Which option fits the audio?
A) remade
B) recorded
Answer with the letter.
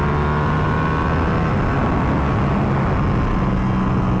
B